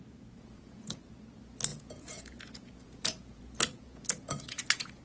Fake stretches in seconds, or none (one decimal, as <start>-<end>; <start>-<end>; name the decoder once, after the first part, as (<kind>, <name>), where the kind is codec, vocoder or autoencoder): 0.0-1.0 (vocoder, Vocos); 1.7-5.0